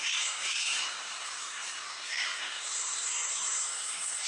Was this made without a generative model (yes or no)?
no